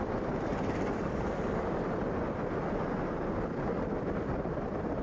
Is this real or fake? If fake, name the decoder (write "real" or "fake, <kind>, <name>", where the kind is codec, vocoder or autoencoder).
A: real